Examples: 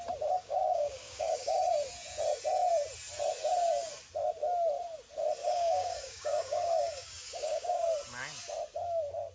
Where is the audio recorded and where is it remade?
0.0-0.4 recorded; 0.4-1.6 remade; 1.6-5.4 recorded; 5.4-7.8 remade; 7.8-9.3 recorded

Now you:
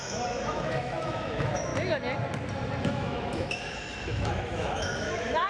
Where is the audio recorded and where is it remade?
0.0-1.7 remade; 1.7-2.8 recorded; 2.8-5.5 remade

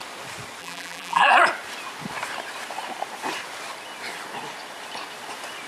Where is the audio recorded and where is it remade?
0.0-0.6 recorded; 0.6-1.3 remade; 1.3-5.7 recorded

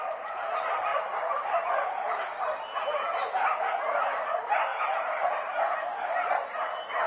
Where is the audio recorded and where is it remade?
0.0-7.1 recorded

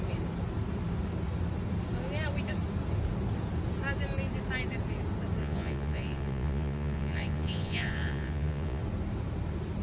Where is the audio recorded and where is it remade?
0.0-5.4 recorded; 5.4-8.8 remade; 8.8-9.8 recorded

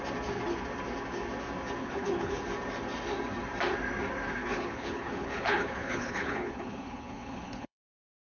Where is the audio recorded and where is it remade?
0.0-1.8 recorded; 1.8-2.4 remade; 2.4-4.4 recorded; 4.4-8.2 remade

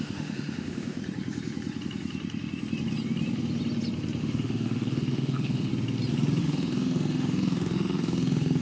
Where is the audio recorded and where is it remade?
0.0-1.0 remade; 1.0-4.2 recorded; 4.2-5.7 remade; 5.7-6.4 recorded; 6.4-8.6 remade

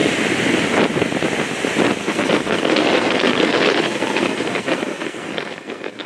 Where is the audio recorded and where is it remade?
0.0-2.0 recorded; 2.0-6.1 remade